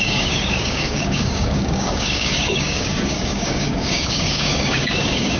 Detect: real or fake fake